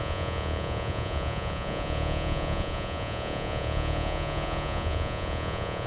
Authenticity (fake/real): fake